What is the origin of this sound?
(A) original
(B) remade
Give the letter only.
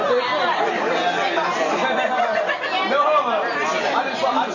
A